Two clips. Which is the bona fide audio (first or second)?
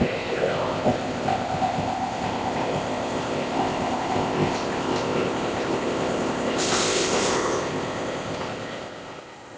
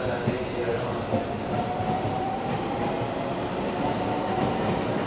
second